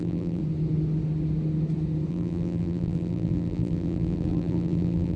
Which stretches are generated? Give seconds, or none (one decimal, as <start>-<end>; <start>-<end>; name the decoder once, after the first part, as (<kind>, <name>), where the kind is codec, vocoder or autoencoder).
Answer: 0.0-0.4 (vocoder, BigVGAN v2); 2.1-5.2